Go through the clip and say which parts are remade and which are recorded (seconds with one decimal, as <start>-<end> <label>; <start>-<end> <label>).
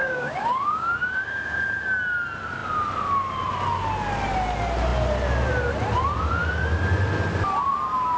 0.0-1.6 remade; 1.6-8.2 recorded